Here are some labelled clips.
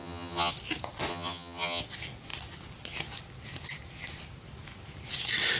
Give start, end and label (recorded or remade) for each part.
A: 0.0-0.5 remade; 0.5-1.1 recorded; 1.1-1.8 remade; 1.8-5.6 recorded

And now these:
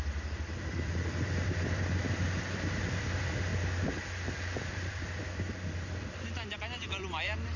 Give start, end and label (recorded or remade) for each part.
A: 0.0-3.5 remade; 3.5-4.4 recorded; 4.4-7.6 remade

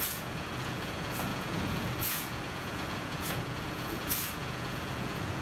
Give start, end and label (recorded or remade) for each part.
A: 0.0-5.4 remade

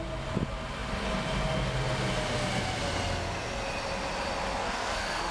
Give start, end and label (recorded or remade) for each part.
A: 0.0-4.6 recorded; 4.6-5.3 remade

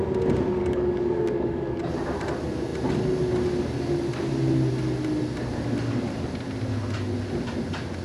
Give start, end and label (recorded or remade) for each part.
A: 0.0-0.6 recorded; 0.6-1.8 remade; 1.8-8.0 recorded

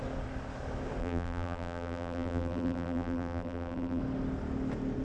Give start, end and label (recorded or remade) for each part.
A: 0.0-1.0 recorded; 1.0-4.0 remade; 4.0-5.0 recorded

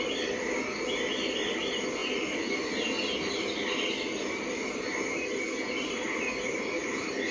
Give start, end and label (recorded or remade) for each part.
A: 0.0-7.3 recorded